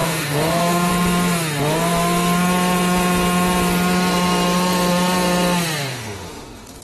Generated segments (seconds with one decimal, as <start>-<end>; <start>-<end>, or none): 0.0-0.9; 5.9-6.8